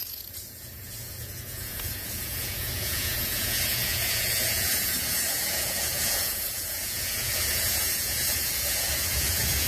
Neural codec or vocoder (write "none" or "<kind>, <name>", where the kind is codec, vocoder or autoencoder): vocoder, Vocos